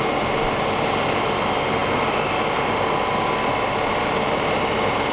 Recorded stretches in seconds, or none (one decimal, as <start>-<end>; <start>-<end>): 0.0-5.1

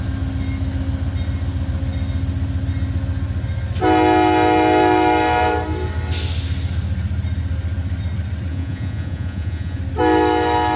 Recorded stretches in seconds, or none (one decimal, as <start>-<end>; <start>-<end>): 0.0-8.5; 9.8-10.8